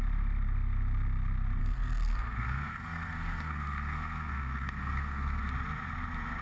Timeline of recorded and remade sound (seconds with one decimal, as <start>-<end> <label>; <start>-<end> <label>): 0.0-1.6 recorded; 1.6-5.4 remade; 5.4-6.4 recorded